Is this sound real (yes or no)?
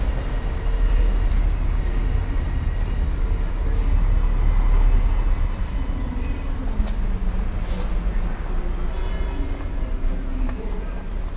yes